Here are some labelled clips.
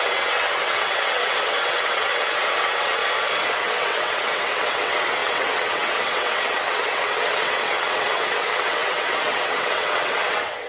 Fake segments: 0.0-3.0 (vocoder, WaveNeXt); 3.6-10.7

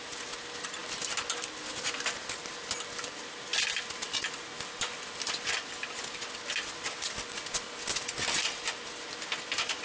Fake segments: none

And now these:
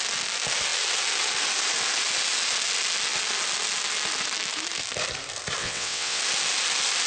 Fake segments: 5.6-6.2 (vocoder, WaveNeXt)

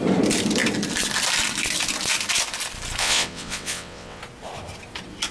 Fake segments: 3.0-4.2 (vocoder, WaveNeXt)